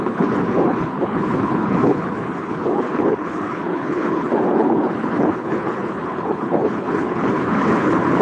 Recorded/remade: remade